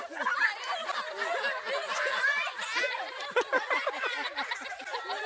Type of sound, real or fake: fake